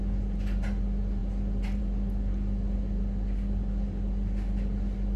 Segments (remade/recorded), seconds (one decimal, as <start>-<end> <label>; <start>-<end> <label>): 0.0-5.2 recorded